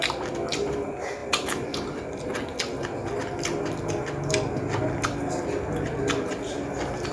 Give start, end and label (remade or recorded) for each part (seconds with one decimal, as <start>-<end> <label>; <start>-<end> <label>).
0.0-7.1 recorded